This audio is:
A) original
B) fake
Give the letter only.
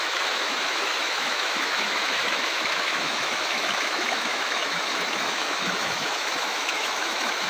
B